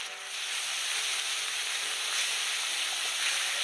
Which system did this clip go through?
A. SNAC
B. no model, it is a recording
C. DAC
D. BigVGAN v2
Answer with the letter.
B